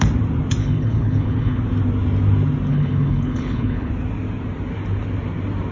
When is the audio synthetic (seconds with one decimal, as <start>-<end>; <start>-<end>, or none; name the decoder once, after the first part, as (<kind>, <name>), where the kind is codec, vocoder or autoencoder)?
0.6-1.6 (codec, HILCodec); 2.7-3.9